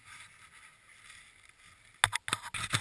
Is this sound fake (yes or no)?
no